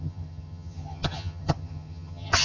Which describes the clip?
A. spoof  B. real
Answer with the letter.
A